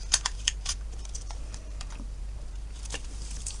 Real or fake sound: fake